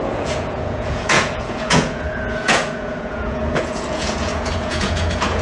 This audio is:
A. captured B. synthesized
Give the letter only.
B